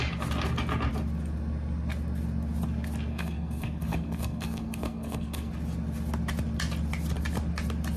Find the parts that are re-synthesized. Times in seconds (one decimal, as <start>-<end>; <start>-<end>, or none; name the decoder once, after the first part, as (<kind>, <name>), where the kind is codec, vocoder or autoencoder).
3.1-5.5 (codec, SNAC)

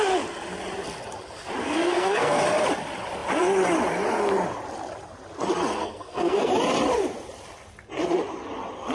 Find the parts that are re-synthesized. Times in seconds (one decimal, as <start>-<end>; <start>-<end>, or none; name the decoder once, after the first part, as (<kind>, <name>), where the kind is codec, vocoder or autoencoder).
1.6-2.4 (codec, SNAC); 5.8-6.5

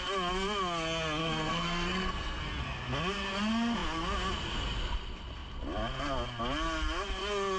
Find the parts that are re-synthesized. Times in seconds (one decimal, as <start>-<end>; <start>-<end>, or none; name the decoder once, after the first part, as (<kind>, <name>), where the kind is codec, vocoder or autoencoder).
1.2-2.4 (codec, SNAC)